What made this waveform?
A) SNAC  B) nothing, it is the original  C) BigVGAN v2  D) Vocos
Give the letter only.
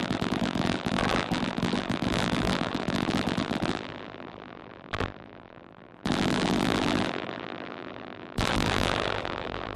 C